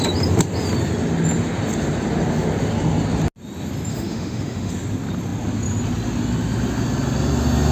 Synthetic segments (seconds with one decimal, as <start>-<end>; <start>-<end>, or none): 3.9-4.7